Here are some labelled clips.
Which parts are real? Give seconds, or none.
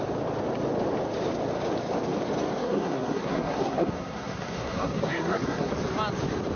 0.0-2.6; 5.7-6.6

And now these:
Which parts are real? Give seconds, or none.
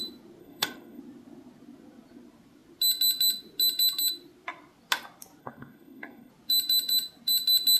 0.0-0.4; 1.0-5.4; 6.3-7.8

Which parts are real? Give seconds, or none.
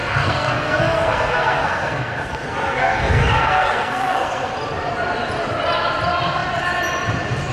4.5-7.5